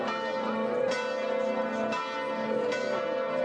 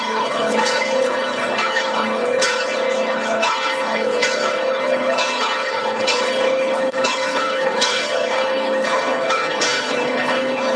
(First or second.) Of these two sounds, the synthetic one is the second